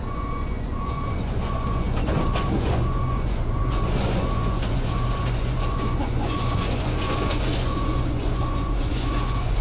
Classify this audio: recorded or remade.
remade